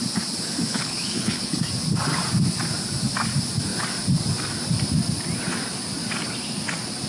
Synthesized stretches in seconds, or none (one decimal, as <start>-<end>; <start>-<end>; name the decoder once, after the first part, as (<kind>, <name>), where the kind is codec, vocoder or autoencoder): 0.7-1.6 (codec, HILCodec)